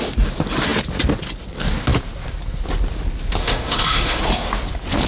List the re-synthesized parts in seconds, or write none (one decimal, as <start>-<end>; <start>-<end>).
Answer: 3.4-4.2